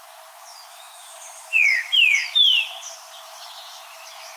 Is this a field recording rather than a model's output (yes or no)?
no